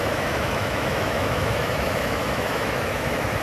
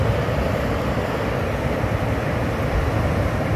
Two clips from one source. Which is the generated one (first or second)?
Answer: first